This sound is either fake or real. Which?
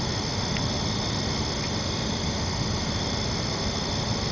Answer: real